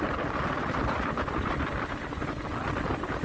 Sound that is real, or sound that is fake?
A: real